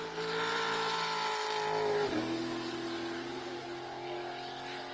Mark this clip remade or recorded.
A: recorded